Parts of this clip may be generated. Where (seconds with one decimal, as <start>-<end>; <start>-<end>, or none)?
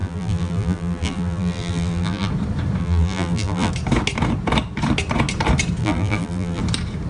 0.0-2.3; 2.8-3.7; 5.8-6.6